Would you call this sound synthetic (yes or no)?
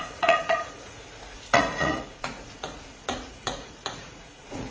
yes